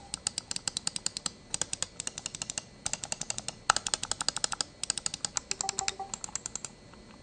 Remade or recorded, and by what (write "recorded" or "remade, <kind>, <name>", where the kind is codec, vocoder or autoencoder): recorded